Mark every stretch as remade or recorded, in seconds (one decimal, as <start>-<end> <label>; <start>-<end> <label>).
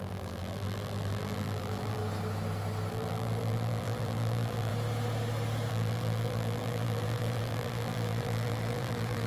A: 0.0-2.0 remade; 2.0-2.9 recorded; 2.9-4.7 remade; 4.7-5.7 recorded; 5.7-9.3 remade